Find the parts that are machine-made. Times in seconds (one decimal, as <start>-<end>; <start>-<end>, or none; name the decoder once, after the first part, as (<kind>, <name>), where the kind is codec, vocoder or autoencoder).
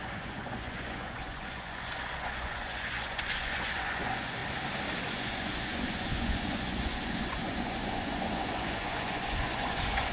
0.0-4.4 (vocoder, Vocos); 5.0-10.1